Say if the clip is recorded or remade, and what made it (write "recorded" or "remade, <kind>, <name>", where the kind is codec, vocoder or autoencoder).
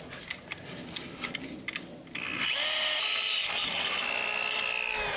recorded